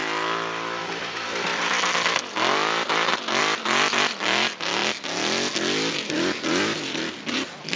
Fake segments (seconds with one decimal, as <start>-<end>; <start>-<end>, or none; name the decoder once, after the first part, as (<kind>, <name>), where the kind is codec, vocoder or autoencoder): 0.8-1.5 (vocoder, BigVGAN v2); 3.4-4.8; 5.9-7.8